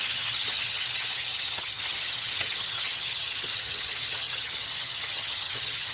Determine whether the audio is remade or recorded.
remade